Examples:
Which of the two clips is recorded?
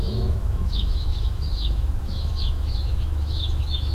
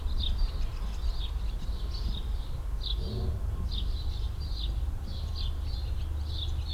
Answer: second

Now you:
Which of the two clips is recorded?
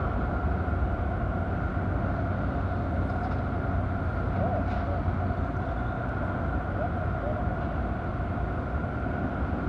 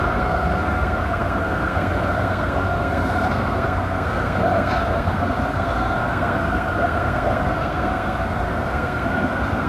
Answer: first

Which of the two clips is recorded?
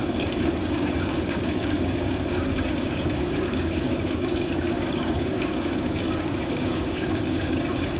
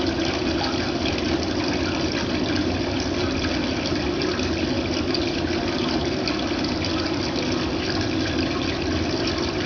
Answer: second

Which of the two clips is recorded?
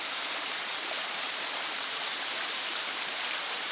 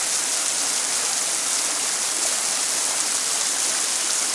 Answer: second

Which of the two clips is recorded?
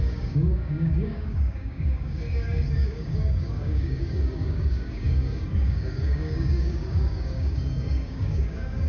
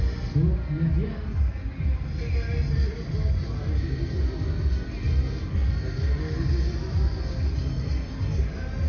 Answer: second